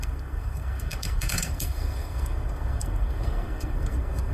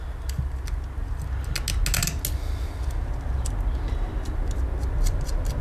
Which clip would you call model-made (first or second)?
first